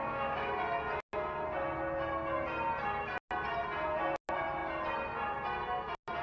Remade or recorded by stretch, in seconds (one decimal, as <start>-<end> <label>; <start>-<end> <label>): 0.0-0.5 remade; 0.5-6.2 recorded